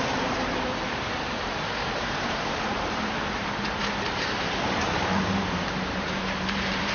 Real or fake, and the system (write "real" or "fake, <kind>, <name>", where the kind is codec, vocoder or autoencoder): fake, vocoder, BigVGAN v2